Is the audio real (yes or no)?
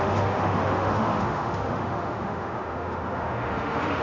no